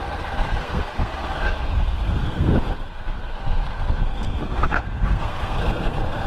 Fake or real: fake